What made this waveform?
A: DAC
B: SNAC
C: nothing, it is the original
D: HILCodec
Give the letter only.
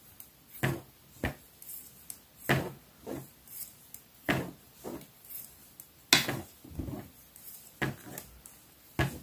C